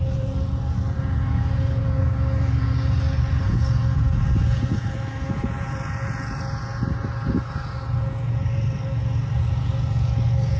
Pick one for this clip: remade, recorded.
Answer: remade